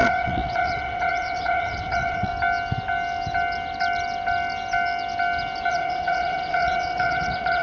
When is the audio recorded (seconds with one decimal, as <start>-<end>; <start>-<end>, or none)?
2.3-5.7